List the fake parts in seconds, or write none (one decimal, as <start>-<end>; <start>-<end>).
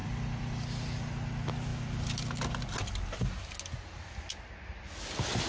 0.0-0.6